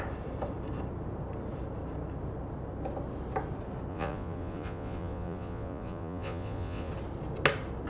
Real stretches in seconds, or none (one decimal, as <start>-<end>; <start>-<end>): 0.0-3.9; 6.9-7.9